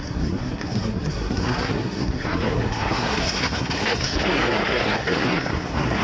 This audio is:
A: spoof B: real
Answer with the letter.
A